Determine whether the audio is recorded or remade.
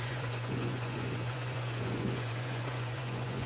remade